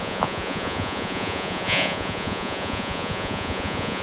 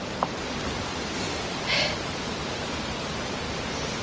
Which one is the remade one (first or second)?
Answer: first